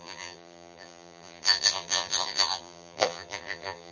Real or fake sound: fake